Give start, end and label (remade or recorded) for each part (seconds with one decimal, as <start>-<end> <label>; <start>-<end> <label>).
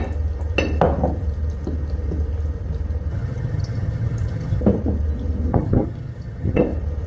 0.0-3.1 recorded; 3.1-4.6 remade; 4.6-5.5 recorded; 5.5-6.6 remade; 6.6-7.1 recorded